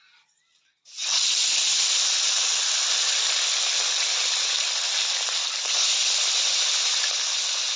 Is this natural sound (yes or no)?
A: yes